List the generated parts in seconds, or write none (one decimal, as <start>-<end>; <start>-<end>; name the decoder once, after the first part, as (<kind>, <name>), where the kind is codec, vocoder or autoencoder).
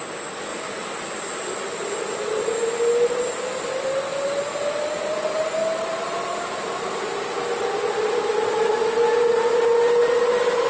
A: 0.5-2.4 (vocoder, BigVGAN v2); 7.6-8.7